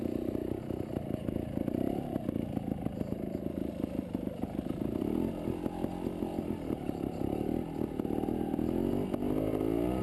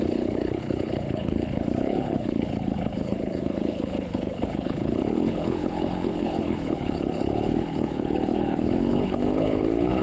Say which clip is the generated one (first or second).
second